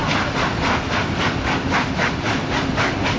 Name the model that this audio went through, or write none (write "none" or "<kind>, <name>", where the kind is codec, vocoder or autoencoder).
none